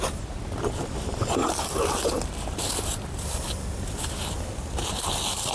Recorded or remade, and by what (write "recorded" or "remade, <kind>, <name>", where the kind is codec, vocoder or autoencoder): recorded